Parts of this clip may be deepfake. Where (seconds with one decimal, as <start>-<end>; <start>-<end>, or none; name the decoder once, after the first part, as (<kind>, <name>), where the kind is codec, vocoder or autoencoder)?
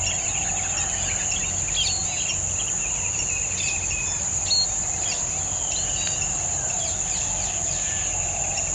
none